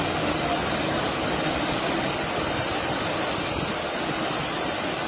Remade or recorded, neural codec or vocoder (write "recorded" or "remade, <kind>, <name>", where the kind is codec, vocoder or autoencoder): recorded